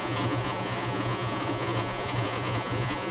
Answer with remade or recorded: remade